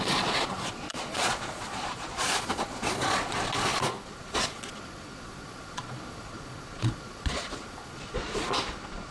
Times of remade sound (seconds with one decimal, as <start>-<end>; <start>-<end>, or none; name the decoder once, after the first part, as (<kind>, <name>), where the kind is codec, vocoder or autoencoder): 0.0-9.1 (vocoder, Vocos)